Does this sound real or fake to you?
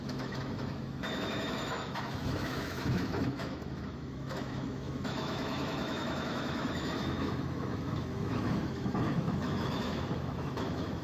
fake